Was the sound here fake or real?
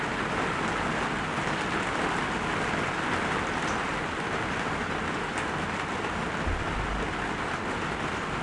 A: real